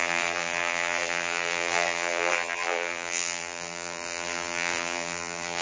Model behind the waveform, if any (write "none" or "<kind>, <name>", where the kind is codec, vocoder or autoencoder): vocoder, BigVGAN v2